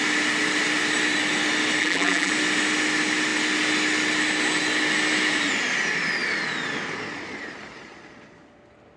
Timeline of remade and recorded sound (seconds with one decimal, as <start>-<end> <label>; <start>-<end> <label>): 0.0-1.8 recorded; 1.8-2.3 remade; 2.3-9.0 recorded